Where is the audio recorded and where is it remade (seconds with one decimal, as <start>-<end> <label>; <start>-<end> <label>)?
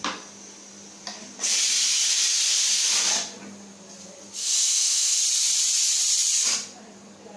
0.0-4.4 recorded; 4.4-5.2 remade; 5.2-7.4 recorded